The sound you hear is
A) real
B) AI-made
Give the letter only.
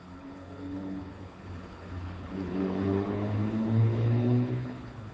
B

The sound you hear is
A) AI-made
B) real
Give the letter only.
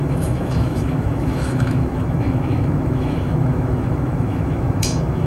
A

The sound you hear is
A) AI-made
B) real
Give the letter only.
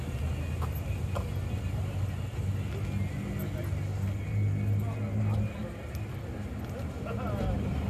B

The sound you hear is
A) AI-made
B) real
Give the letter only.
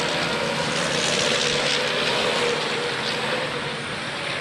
B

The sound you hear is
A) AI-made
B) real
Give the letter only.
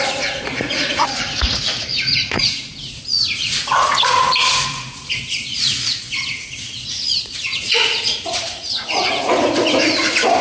A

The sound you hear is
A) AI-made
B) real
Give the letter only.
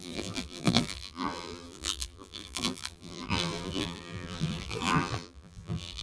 A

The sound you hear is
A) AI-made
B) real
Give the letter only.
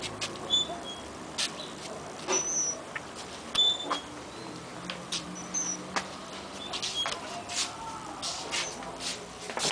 B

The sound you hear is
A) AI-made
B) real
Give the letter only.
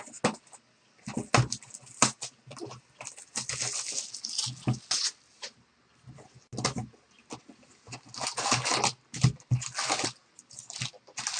B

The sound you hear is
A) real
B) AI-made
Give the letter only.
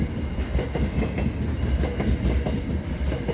A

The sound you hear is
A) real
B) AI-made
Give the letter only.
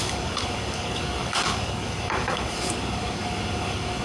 B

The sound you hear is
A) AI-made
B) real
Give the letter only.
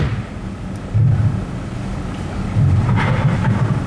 B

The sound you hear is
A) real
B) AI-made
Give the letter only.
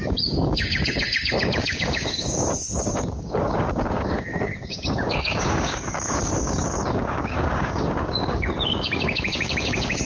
B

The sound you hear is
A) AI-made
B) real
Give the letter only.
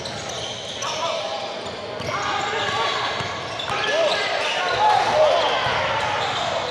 B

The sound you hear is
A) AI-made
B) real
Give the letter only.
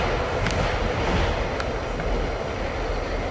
B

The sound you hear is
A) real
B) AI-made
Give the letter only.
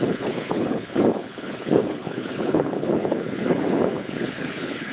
B